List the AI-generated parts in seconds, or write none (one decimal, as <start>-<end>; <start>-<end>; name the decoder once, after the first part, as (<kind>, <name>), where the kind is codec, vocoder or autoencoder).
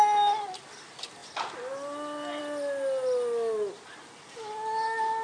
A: 1.2-2.4 (vocoder, BigVGAN v2)